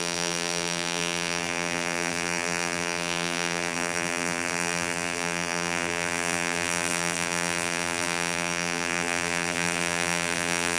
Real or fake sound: fake